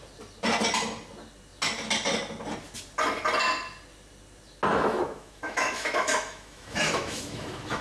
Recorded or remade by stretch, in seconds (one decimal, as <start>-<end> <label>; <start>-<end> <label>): 0.0-4.7 recorded; 4.7-7.8 remade